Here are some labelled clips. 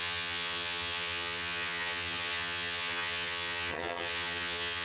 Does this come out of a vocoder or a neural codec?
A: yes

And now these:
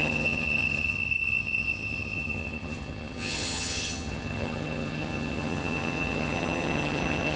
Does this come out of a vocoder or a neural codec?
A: yes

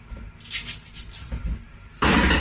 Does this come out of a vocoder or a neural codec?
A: no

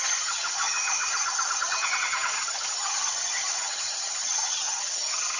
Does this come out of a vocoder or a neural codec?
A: yes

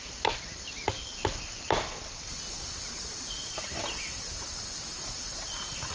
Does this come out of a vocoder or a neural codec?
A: no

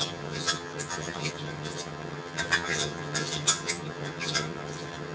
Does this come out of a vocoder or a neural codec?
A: yes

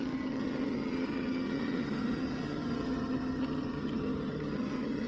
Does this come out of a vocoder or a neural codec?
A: yes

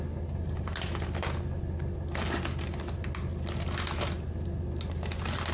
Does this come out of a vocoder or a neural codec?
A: no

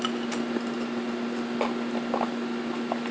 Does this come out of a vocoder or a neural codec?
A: no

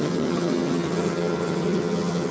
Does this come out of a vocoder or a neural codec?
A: yes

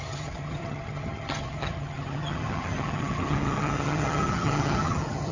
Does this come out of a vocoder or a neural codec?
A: yes